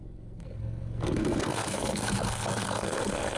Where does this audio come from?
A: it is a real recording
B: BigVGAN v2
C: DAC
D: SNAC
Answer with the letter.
D